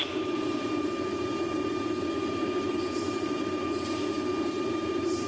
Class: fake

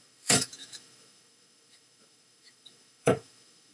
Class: fake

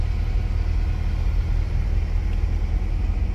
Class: real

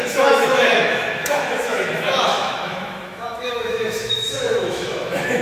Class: fake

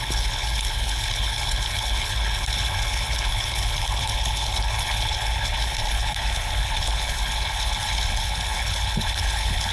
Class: fake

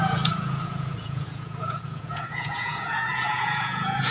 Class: fake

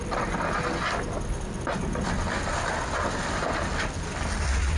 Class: real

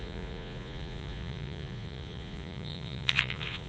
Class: fake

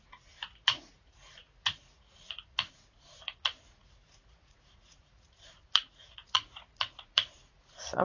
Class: fake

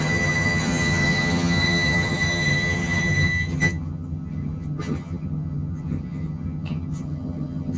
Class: fake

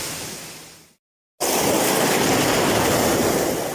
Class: real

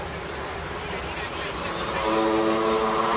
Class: real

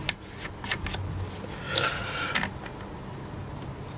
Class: real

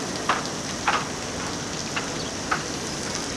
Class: real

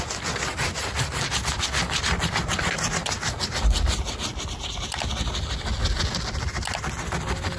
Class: real